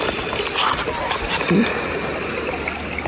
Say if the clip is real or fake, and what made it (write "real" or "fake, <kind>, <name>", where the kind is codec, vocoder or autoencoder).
real